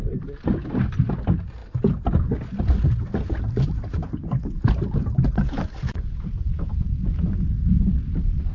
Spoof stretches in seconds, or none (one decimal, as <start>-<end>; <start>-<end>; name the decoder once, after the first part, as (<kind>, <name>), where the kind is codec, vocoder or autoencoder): none